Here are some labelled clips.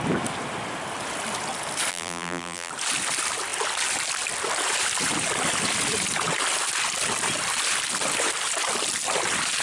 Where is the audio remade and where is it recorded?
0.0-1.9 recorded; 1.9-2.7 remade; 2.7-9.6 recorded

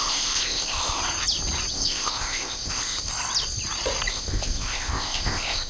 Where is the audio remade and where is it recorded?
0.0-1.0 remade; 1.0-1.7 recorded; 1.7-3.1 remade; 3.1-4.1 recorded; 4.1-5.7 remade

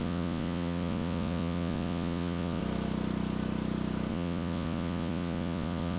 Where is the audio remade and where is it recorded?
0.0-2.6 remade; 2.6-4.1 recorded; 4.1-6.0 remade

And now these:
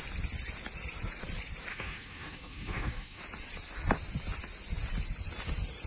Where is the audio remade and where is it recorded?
0.0-1.7 recorded; 1.7-3.2 remade; 3.2-5.9 recorded

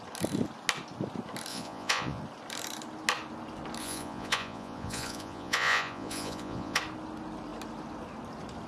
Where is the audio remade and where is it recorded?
0.0-1.5 recorded; 1.5-2.2 remade; 2.2-3.8 recorded; 3.8-6.8 remade; 6.8-8.7 recorded

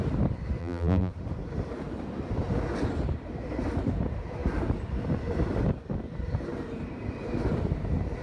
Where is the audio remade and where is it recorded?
0.0-0.6 recorded; 0.6-1.1 remade; 1.1-8.2 recorded

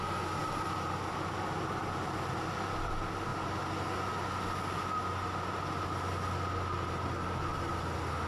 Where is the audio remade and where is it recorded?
0.0-0.4 recorded; 0.4-1.0 remade; 1.0-8.3 recorded